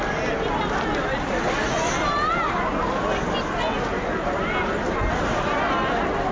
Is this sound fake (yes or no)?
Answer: no